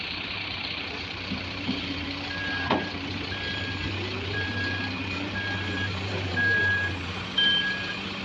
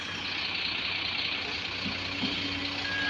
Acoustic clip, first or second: second